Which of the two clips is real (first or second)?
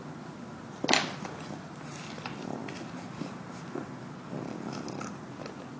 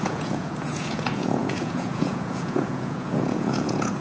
first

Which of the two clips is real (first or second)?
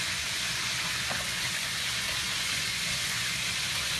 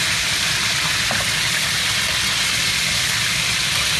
second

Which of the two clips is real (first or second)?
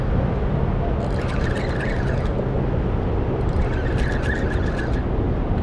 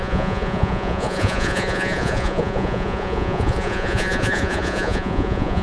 first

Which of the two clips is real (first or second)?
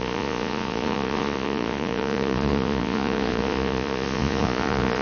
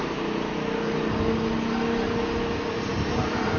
second